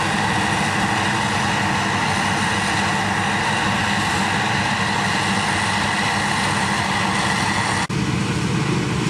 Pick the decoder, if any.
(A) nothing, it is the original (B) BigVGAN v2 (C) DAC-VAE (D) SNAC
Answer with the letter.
A